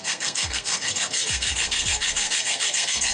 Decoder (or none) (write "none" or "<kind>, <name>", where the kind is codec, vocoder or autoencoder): codec, SNAC